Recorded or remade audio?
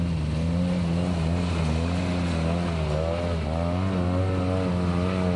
recorded